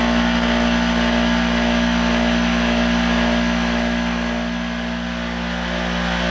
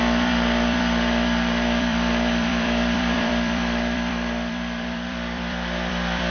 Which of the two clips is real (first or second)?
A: first